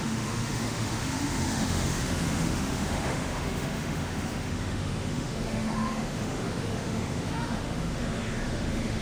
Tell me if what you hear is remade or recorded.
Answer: remade